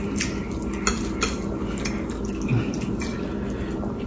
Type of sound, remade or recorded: recorded